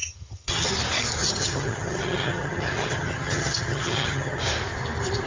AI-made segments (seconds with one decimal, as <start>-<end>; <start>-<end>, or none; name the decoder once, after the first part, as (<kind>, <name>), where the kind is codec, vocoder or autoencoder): 0.0-0.7 (vocoder, HiFi-GAN); 1.2-4.4